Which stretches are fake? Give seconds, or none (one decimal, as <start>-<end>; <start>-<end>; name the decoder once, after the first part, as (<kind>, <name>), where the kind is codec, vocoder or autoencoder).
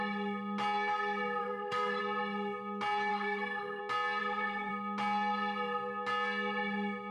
1.4-2.0 (codec, SNAC); 3.1-3.8; 4.2-4.7